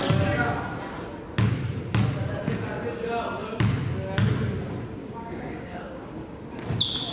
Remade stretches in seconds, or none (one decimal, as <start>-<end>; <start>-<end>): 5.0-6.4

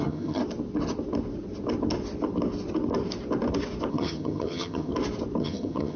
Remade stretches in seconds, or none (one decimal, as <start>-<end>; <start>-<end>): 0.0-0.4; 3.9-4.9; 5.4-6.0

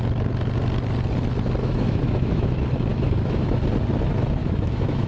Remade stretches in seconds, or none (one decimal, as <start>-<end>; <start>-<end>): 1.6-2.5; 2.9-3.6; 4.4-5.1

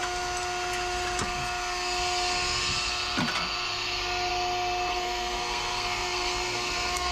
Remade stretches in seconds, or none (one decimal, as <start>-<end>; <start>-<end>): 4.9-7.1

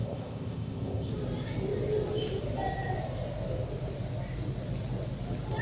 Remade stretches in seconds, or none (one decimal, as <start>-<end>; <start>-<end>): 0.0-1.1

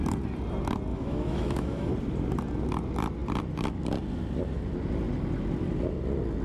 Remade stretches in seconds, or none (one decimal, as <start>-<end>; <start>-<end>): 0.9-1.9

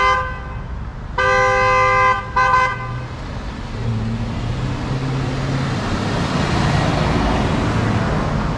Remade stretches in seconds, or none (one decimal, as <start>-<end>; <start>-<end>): none

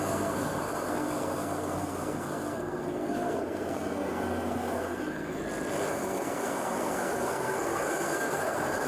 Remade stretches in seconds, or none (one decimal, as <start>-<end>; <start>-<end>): 0.0-5.4; 5.9-8.9